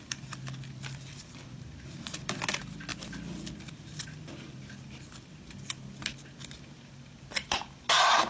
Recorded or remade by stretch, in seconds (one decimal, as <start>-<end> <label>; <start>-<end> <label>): 0.0-8.3 recorded